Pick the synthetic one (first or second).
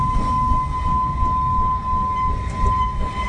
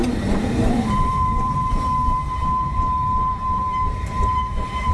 second